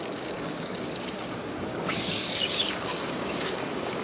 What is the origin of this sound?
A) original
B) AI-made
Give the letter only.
B